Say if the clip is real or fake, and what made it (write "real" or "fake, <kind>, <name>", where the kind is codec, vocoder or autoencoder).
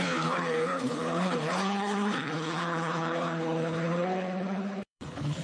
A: fake, codec, HILCodec